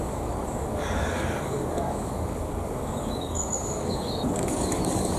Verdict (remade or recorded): remade